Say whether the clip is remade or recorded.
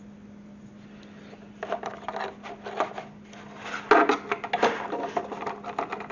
recorded